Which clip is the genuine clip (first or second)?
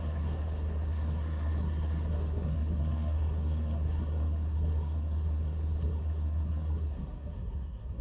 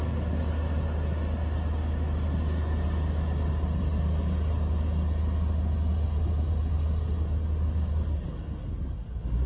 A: second